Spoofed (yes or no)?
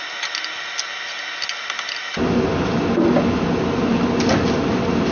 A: no